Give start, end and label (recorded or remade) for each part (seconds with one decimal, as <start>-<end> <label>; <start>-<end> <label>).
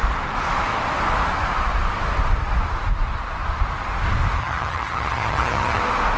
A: 0.0-4.4 recorded; 4.4-5.8 remade; 5.8-6.2 recorded